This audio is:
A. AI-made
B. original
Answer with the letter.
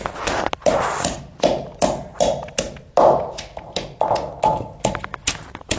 B